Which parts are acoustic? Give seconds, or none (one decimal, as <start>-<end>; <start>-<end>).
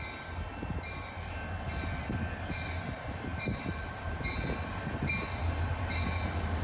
0.0-6.6